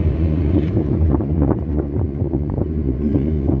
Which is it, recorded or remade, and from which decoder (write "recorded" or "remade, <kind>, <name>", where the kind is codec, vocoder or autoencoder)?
remade, vocoder, Vocos